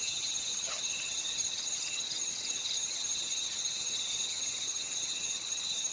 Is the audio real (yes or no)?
no